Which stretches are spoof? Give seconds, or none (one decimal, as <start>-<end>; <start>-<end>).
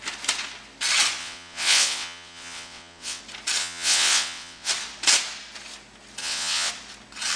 1.2-3.2; 3.6-4.7; 6.2-6.7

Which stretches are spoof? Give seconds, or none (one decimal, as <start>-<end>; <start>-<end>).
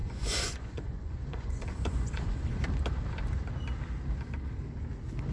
0.0-2.6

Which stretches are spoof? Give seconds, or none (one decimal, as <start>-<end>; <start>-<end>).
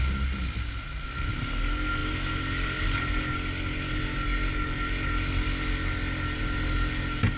none